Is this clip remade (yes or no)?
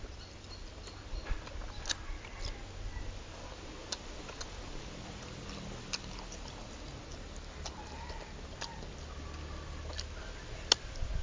no